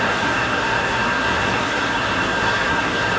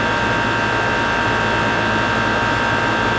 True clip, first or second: second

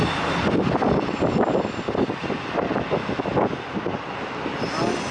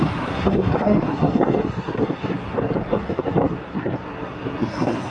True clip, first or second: first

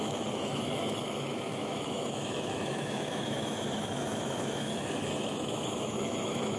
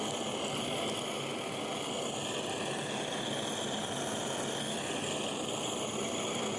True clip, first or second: second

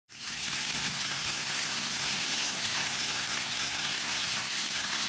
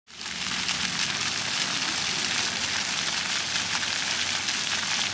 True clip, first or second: second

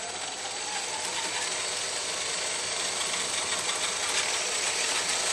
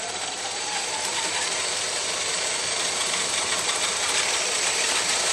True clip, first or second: first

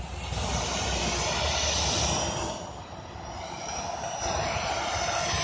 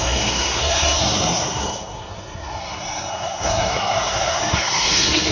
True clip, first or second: first